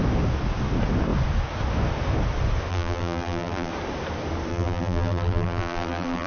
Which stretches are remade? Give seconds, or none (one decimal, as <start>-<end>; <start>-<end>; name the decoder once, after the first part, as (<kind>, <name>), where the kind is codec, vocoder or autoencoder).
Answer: 2.7-3.7 (vocoder, BigVGAN v2); 4.5-6.3